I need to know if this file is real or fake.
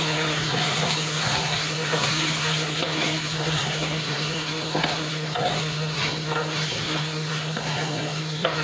fake